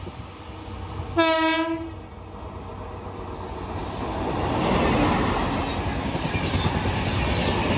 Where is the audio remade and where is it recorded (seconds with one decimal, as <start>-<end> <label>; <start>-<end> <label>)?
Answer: 0.0-7.8 recorded